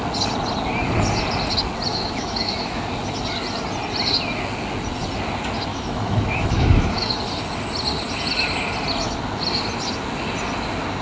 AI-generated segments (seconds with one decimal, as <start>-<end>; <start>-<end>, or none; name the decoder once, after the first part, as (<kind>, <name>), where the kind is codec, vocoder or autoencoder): 1.9-2.8 (autoencoder, DAC-VAE); 5.7-7.2